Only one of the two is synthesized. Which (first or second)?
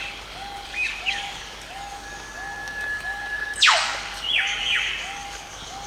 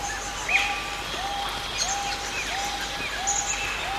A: first